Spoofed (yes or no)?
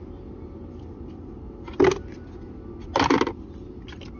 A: no